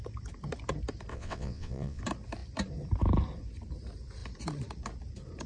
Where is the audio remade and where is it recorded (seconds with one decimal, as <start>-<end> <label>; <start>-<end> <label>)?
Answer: 0.0-1.1 recorded; 1.1-2.0 remade; 2.0-5.5 recorded